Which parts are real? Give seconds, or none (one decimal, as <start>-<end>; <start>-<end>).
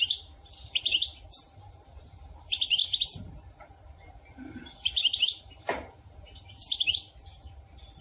6.6-7.2